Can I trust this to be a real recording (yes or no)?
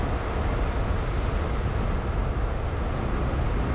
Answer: yes